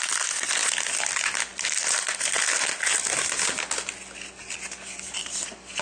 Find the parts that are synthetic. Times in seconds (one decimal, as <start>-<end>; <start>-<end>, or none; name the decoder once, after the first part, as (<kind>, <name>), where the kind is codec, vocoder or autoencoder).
none